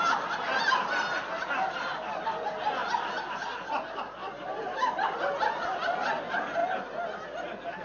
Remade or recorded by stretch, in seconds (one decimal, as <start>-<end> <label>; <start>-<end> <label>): 0.0-4.2 recorded; 4.2-4.9 remade; 4.9-7.8 recorded